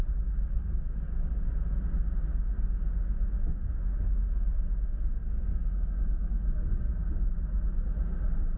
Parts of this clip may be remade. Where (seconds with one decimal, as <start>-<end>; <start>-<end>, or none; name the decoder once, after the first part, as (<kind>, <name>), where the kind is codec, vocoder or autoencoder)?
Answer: 5.2-7.1 (codec, DAC)